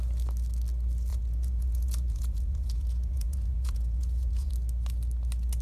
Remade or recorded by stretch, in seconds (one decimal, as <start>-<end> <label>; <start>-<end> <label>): 0.0-1.1 recorded; 1.1-4.5 remade; 4.5-5.6 recorded